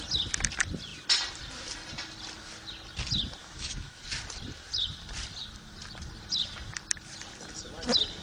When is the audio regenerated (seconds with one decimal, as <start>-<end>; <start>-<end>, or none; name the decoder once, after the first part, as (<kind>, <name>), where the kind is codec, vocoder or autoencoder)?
3.4-4.0 (autoencoder, DAC-VAE)

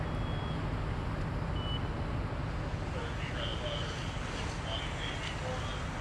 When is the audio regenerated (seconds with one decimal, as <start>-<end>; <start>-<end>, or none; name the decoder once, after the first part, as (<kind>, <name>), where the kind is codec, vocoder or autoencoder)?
none

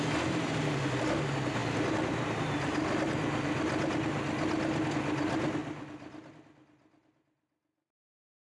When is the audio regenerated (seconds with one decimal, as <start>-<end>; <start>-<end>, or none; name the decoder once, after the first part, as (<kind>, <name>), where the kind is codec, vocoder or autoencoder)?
none